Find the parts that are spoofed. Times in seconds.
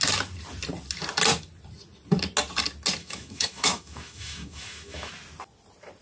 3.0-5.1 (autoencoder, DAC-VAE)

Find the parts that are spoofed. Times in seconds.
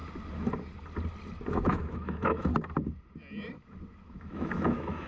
1.5-2.5 (autoencoder, DAC-VAE); 4.1-5.1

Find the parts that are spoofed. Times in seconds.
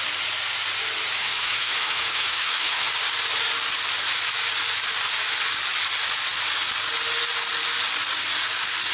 1.2-2.9 (autoencoder, DAC-VAE)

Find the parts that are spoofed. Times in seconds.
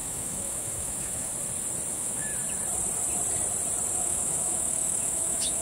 0.0-1.3 (autoencoder, DAC-VAE); 1.9-2.3; 4.0-5.6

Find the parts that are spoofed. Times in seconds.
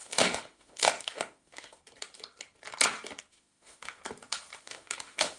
0.0-1.8 (autoencoder, DAC-VAE); 3.3-4.0; 4.6-5.4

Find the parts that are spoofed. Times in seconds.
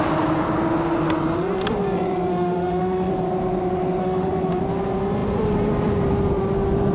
2.3-3.1 (autoencoder, DAC-VAE); 4.0-4.6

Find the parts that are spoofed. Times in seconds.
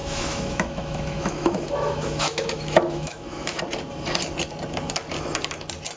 0.0-3.6 (autoencoder, DAC-VAE)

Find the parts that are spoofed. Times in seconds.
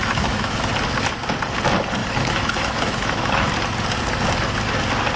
0.0-0.7 (autoencoder, DAC-VAE); 2.0-3.5